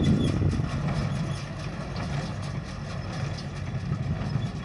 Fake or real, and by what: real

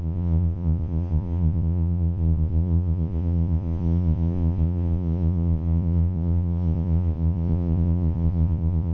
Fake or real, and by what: fake, vocoder, Vocos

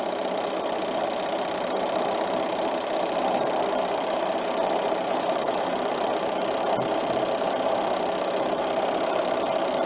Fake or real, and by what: real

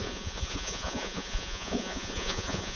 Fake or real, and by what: fake, vocoder, Vocos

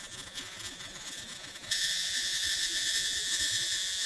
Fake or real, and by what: fake, vocoder, Vocos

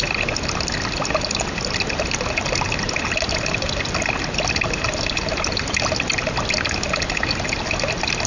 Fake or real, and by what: real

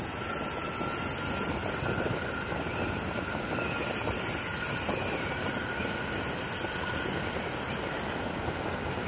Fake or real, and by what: real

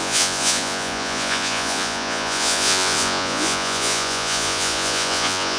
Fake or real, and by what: fake, vocoder, Vocos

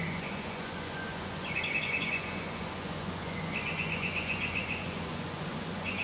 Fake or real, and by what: fake, vocoder, Vocos